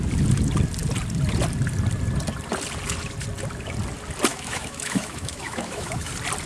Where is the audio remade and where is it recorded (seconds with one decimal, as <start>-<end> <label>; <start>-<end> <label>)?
0.0-4.3 recorded; 4.3-6.1 remade; 6.1-6.5 recorded